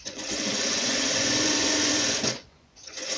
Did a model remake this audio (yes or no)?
yes